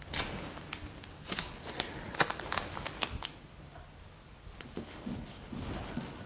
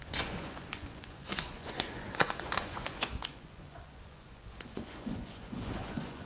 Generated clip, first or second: second